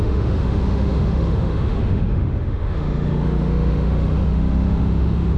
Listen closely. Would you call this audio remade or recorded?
remade